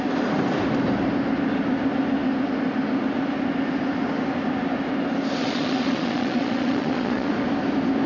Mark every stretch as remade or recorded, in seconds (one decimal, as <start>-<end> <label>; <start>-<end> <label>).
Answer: 0.0-5.4 recorded; 5.4-7.3 remade; 7.3-8.1 recorded